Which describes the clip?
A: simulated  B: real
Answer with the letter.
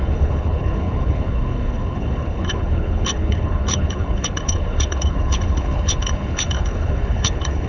A